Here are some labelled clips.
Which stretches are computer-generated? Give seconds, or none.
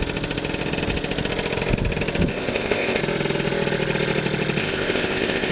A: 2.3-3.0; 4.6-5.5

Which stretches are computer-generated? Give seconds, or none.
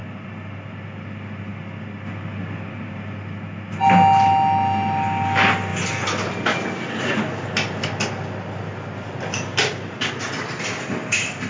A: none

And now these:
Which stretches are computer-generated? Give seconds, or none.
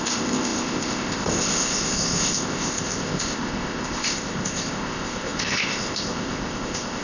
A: 0.0-7.0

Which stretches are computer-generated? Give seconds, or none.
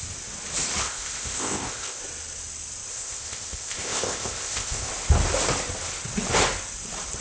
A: 0.8-2.0; 2.9-4.9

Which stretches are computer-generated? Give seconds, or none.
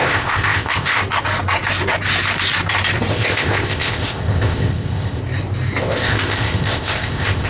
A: 0.0-1.0; 3.1-5.2; 5.8-7.5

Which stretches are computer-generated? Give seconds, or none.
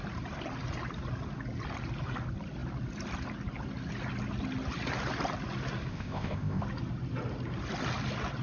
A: 5.9-6.6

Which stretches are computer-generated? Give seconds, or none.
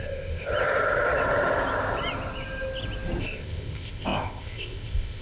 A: 0.0-0.5; 3.2-5.2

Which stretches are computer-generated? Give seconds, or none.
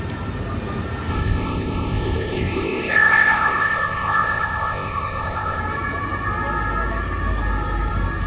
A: 1.1-5.6